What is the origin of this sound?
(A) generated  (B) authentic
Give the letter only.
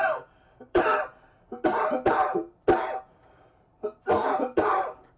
A